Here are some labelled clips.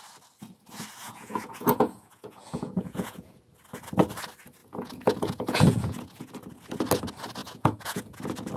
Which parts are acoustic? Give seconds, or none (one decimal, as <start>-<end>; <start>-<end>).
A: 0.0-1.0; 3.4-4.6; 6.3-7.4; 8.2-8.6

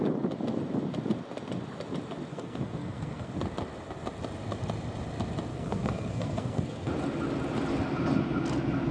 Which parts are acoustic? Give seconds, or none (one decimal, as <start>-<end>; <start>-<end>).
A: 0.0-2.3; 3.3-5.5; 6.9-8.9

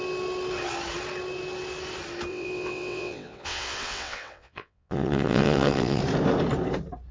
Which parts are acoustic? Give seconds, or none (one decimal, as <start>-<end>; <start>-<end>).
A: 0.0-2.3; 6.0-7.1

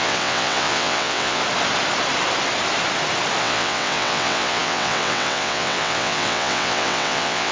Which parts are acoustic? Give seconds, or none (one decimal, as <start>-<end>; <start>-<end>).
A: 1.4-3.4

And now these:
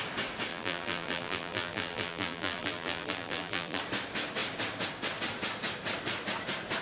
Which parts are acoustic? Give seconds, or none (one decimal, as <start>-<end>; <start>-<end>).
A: 0.0-0.5; 3.8-6.8

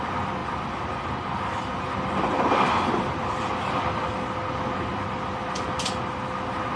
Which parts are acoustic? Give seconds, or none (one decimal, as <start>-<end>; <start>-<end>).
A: 0.0-6.8

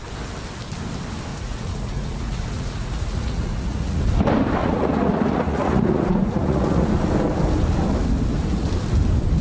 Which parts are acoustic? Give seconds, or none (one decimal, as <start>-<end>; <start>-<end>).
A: 0.0-1.3; 4.0-4.6; 6.9-9.4